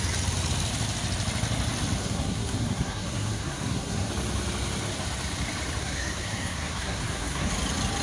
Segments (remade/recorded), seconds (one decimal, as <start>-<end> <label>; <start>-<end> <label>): 0.0-2.0 recorded; 2.0-4.1 remade; 4.1-5.8 recorded; 5.8-7.5 remade; 7.5-8.0 recorded